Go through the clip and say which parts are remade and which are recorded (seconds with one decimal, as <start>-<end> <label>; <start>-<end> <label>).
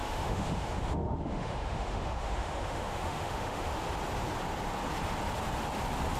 0.0-3.7 remade; 3.7-6.2 recorded